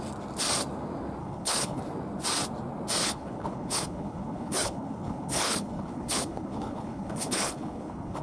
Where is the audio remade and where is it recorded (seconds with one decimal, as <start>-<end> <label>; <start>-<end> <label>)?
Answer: 0.0-1.2 recorded; 1.2-1.8 remade; 1.8-3.0 recorded; 3.0-8.2 remade